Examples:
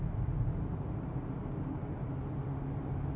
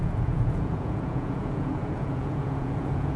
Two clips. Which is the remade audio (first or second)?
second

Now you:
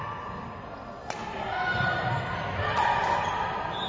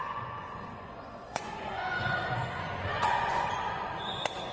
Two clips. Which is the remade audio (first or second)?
second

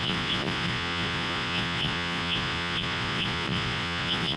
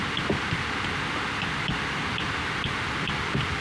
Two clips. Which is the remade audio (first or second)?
first